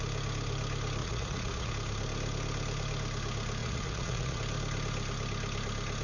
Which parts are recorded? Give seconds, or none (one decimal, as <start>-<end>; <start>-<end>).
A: 0.0-1.0; 1.7-3.6; 4.4-6.0